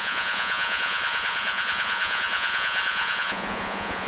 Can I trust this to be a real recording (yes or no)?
no